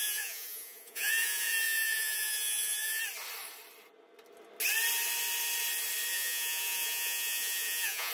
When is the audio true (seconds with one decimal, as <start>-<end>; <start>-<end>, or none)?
3.0-6.1